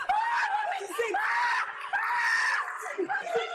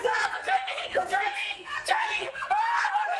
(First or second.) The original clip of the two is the first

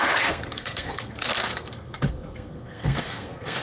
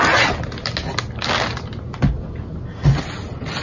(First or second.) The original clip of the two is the second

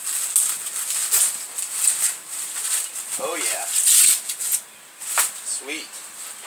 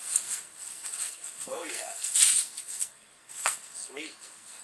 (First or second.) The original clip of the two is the first